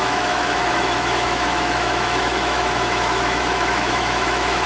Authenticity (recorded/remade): remade